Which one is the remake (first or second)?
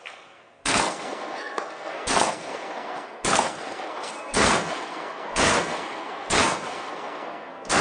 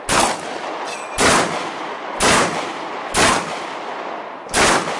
first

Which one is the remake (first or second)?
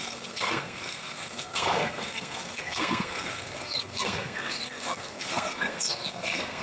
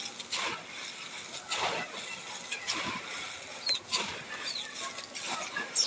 first